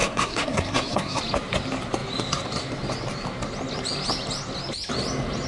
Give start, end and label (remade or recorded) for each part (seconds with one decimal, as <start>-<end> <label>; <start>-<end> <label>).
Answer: 0.0-1.2 remade; 1.2-5.5 recorded